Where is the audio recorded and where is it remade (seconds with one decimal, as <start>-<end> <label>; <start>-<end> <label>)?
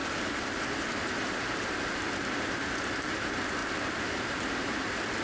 0.0-3.1 remade; 3.1-3.6 recorded; 3.6-4.4 remade; 4.4-5.2 recorded